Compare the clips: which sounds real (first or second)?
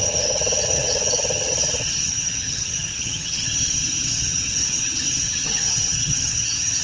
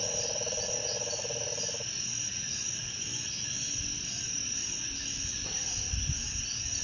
second